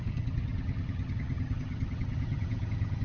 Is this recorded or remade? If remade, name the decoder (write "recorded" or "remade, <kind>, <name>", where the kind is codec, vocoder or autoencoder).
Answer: remade, vocoder, HiFi-GAN